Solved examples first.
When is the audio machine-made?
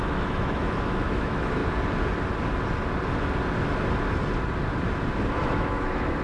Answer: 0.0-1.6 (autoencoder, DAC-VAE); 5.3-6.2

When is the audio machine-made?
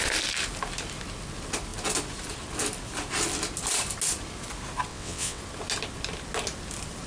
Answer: 4.9-5.4 (vocoder, WaveNeXt)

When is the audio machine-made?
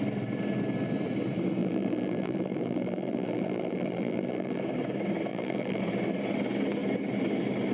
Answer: 1.6-4.6 (vocoder, BigVGAN v2); 5.3-5.8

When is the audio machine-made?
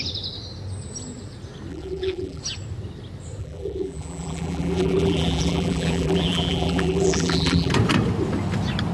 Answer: 1.7-2.4 (vocoder, BigVGAN v2); 3.4-7.7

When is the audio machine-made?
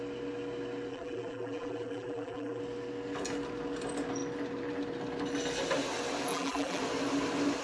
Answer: 0.9-2.6 (vocoder, BigVGAN v2); 6.3-6.8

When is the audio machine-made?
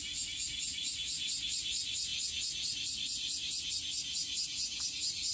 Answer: none